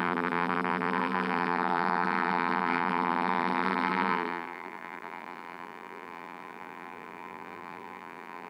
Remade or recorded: remade